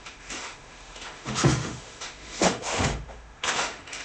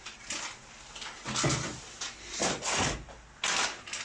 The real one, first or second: second